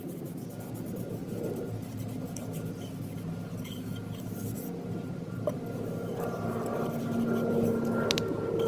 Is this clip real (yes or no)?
yes